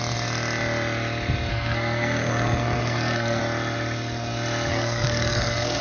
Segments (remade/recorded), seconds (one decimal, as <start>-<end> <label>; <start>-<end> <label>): 0.0-1.5 recorded; 1.5-3.4 remade; 3.4-4.7 recorded; 4.7-5.8 remade